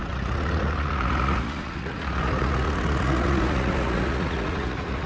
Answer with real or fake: fake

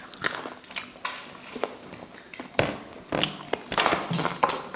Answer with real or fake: real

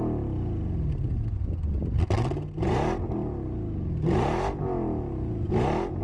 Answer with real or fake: real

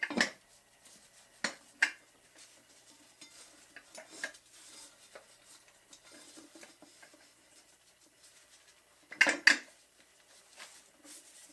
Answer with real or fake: real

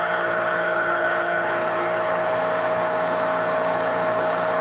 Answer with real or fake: fake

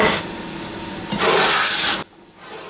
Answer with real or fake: real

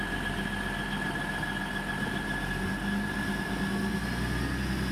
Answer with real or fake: real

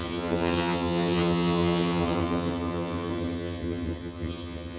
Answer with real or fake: fake